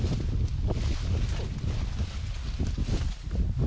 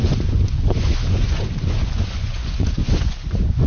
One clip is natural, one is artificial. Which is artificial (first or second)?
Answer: second